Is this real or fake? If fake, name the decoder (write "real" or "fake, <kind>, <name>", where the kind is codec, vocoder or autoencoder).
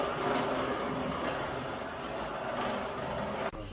real